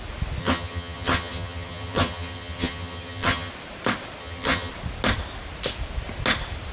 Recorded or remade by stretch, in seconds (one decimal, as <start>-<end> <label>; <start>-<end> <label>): 0.0-0.4 recorded; 0.4-3.5 remade; 3.5-4.2 recorded; 4.2-4.7 remade; 4.7-6.7 recorded